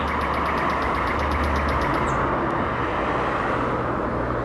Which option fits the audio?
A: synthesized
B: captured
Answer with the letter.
B